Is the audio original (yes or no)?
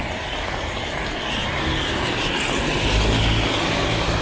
yes